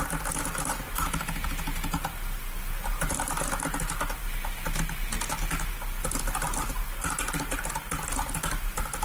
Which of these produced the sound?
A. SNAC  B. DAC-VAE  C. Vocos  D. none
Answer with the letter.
D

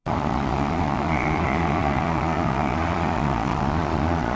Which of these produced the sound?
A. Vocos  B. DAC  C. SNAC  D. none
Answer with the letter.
A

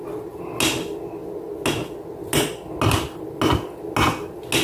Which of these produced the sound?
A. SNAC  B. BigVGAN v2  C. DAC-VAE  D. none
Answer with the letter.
D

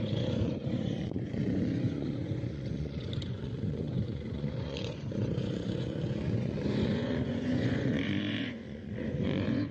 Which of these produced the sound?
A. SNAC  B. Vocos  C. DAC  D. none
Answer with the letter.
B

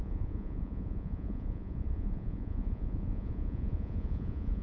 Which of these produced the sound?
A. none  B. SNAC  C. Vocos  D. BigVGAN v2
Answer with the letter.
C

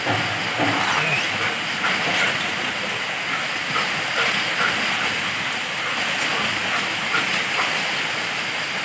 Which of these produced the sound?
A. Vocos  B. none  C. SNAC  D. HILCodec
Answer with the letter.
B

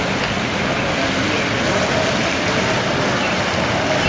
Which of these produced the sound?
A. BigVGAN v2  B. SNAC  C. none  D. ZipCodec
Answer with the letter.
C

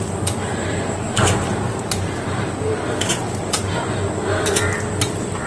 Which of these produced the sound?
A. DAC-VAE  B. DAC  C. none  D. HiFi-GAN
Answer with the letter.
C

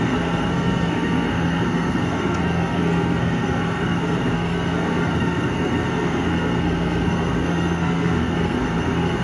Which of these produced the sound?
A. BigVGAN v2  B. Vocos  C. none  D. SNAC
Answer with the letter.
D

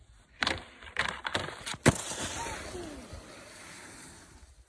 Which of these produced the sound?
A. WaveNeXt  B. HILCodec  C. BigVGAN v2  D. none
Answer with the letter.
D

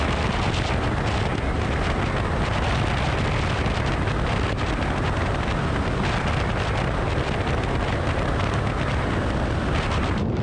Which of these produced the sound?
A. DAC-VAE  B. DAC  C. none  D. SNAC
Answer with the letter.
C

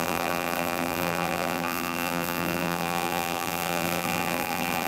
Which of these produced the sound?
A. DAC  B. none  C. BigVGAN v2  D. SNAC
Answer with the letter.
C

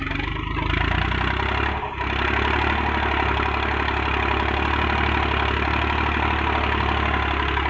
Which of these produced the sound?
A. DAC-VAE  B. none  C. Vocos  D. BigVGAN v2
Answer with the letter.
B